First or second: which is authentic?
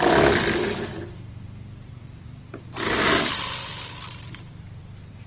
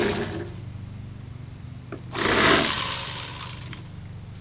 second